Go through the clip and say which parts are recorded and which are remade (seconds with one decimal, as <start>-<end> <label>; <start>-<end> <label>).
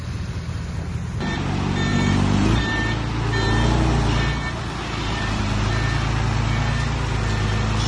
0.0-1.9 recorded; 1.9-2.6 remade; 2.6-5.0 recorded; 5.0-5.7 remade; 5.7-7.9 recorded